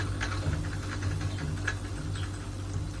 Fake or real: real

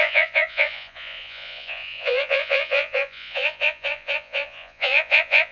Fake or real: fake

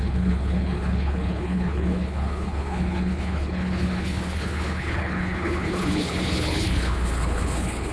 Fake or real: fake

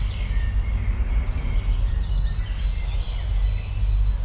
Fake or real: real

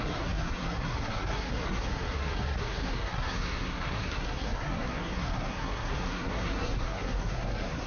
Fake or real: fake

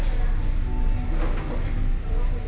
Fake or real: real